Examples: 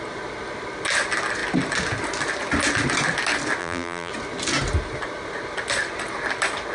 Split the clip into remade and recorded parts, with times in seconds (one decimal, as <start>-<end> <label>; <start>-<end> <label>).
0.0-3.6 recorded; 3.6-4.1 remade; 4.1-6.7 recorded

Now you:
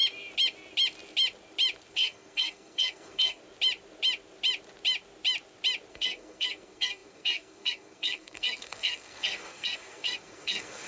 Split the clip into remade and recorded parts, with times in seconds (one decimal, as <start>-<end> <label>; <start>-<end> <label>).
0.0-1.9 recorded; 1.9-3.4 remade; 3.4-5.9 recorded; 5.9-10.9 remade

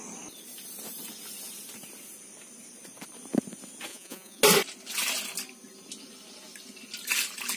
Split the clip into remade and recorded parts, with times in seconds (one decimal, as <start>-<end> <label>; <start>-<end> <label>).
0.0-3.9 recorded; 3.9-4.4 remade; 4.4-7.6 recorded